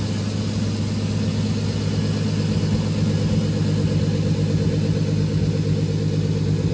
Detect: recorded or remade recorded